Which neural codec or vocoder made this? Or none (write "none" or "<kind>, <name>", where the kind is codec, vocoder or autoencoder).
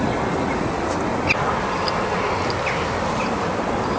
none